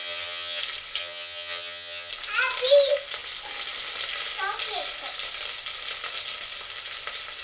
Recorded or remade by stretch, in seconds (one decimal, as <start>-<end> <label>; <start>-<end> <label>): 0.0-0.6 remade; 0.6-1.0 recorded; 1.0-2.1 remade; 2.1-7.4 recorded